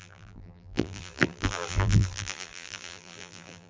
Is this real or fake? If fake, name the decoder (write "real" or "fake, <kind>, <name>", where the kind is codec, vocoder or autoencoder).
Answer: fake, vocoder, BigVGAN v2